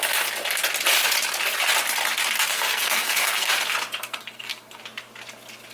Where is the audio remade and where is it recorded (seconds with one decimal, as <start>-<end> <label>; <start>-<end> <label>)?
0.0-2.5 recorded; 2.5-3.5 remade; 3.5-4.0 recorded; 4.0-4.8 remade; 4.8-5.7 recorded